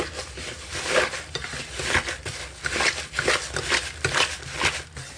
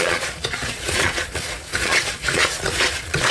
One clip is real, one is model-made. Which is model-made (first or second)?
second